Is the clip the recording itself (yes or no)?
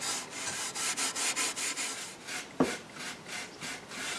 yes